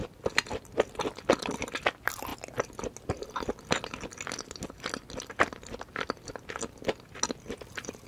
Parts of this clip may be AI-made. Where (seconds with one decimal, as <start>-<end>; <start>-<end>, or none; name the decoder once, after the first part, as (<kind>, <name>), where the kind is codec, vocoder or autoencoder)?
none